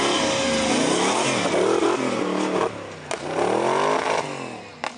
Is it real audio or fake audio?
real